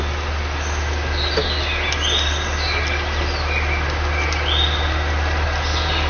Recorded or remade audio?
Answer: recorded